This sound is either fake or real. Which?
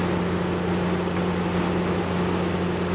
real